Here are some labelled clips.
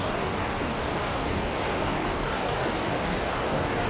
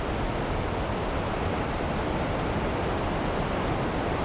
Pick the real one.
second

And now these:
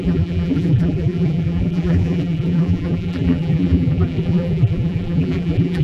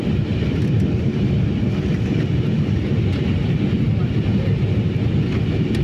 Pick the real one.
second